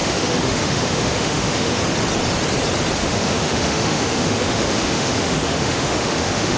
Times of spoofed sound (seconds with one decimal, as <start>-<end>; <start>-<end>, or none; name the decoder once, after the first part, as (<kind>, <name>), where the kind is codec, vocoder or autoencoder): 0.0-1.8 (autoencoder, DAC-VAE); 3.0-6.6